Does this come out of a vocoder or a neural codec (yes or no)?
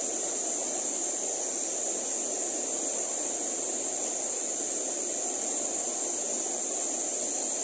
no